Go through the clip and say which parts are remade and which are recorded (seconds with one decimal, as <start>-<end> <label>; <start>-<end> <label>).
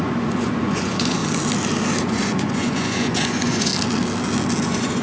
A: 0.0-1.2 remade; 1.2-2.0 recorded; 2.0-3.7 remade; 3.7-4.6 recorded; 4.6-5.0 remade